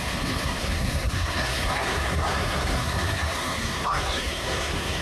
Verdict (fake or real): fake